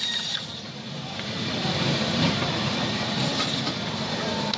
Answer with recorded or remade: remade